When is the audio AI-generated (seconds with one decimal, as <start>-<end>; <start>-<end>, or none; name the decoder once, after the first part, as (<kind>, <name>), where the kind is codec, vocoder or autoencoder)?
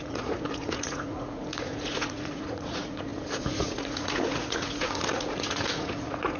0.0-6.4 (vocoder, Vocos)